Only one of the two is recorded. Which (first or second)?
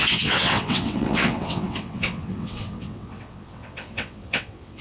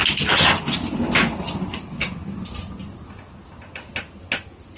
second